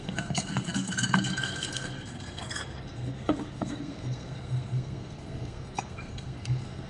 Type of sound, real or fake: fake